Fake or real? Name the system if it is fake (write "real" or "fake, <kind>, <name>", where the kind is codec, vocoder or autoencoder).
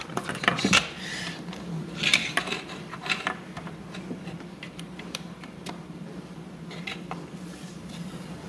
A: fake, vocoder, BigVGAN v2